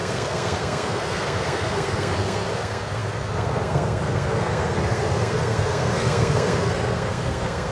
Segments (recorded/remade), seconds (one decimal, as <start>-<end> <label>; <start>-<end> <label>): 0.0-7.7 remade